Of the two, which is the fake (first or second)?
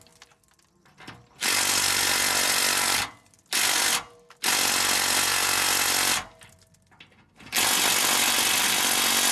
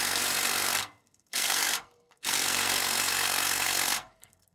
second